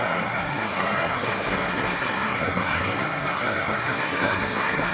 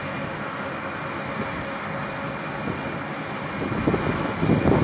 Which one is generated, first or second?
first